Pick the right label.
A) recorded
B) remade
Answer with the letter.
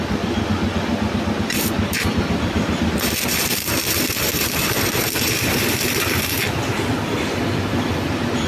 B